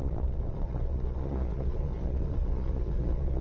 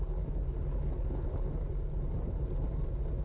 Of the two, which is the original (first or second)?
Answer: second